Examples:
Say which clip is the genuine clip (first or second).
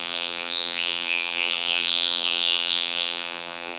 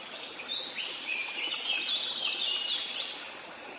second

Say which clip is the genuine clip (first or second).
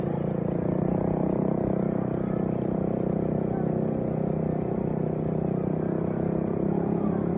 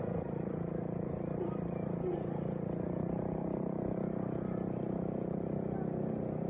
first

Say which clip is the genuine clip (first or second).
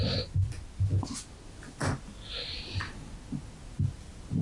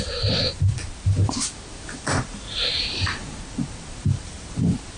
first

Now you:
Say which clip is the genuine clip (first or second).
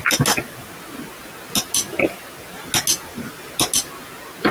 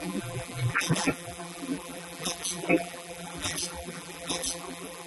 first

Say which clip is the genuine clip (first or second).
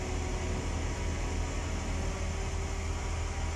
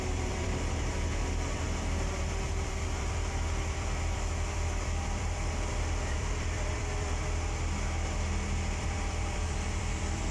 first